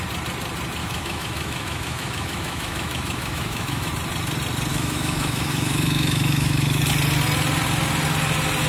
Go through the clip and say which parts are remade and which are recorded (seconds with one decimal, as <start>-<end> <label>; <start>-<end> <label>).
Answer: 0.0-0.8 recorded; 0.8-3.9 remade; 3.9-4.7 recorded; 4.7-6.8 remade; 6.8-8.7 recorded